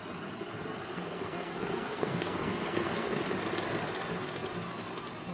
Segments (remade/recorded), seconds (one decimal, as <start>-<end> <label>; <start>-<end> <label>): 0.0-0.9 recorded; 0.9-3.2 remade; 3.2-5.3 recorded

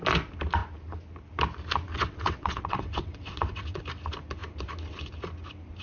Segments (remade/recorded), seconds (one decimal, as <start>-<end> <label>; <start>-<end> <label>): 0.0-1.9 recorded; 1.9-3.8 remade; 3.8-5.8 recorded

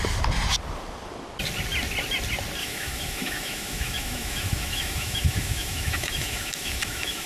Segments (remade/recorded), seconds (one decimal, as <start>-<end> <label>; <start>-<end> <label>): 0.0-2.6 recorded; 2.6-7.3 remade